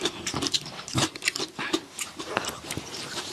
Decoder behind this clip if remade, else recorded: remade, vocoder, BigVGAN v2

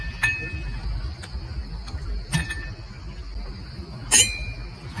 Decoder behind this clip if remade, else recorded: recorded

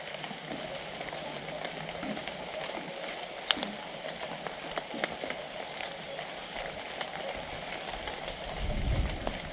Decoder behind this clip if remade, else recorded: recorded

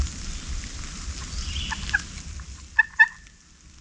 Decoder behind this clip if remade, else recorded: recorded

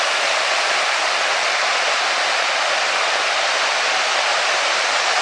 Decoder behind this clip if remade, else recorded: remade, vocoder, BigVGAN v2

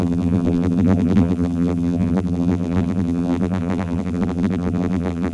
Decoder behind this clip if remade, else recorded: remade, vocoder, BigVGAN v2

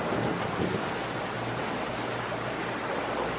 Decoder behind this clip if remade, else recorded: recorded